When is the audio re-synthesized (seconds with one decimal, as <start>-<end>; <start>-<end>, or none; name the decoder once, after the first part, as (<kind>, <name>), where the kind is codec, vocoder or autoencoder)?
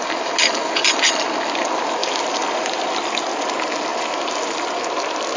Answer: 2.0-3.4 (vocoder, BigVGAN v2); 3.9-4.8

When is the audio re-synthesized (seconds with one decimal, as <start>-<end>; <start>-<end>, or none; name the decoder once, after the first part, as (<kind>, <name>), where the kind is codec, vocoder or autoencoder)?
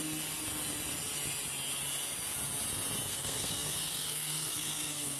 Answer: 3.1-5.2 (codec, SNAC)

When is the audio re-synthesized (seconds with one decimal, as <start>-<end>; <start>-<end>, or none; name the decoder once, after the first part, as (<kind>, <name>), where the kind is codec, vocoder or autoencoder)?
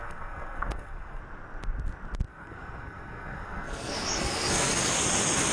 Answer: 0.0-1.2 (codec, SNAC); 2.3-4.8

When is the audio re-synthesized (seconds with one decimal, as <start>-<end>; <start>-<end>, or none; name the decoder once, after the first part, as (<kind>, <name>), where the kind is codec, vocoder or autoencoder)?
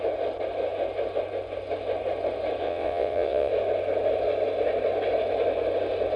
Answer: 2.6-3.5 (vocoder, WaveNeXt)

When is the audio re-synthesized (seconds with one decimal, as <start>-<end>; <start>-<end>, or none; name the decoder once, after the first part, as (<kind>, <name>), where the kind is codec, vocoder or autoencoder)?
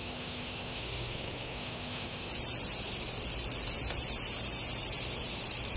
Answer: 0.0-2.3 (autoencoder, DAC-VAE)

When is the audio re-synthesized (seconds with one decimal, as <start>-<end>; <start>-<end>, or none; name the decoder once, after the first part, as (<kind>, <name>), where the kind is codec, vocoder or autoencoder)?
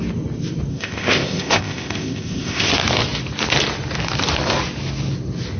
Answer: 0.7-2.7 (codec, ZipCodec)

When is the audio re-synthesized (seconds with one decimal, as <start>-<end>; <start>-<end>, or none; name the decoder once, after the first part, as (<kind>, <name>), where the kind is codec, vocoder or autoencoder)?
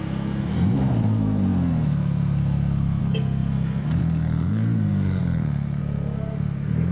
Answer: 0.0-6.9 (codec, SNAC)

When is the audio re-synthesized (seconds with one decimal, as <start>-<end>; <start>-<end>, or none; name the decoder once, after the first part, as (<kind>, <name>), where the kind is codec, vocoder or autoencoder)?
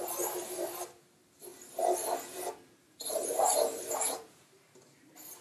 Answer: 0.0-1.5 (vocoder, BigVGAN v2); 2.8-5.4